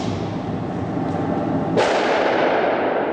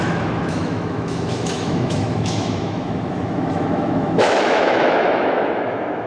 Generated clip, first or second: second